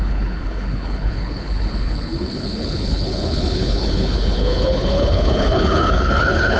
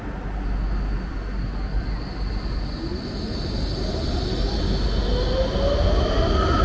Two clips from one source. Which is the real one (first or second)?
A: second